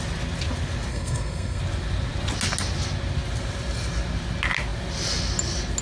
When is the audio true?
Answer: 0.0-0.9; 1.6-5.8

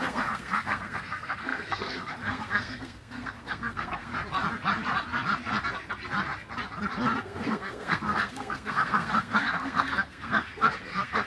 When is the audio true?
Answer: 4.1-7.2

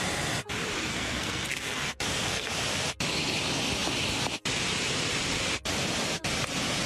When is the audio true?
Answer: 0.0-0.9; 2.5-6.9